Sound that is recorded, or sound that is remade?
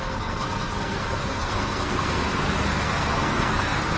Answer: remade